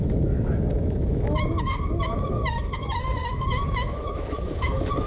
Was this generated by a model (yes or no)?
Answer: yes